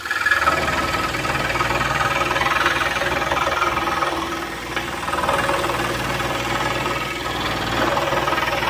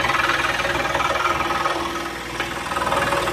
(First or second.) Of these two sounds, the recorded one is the second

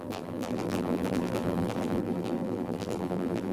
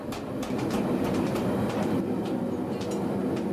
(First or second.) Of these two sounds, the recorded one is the second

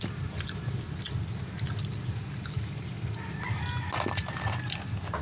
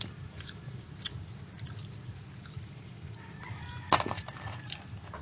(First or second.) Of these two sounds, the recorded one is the first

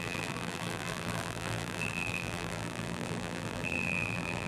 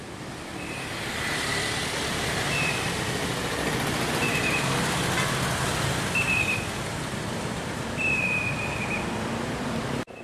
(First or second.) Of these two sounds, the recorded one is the second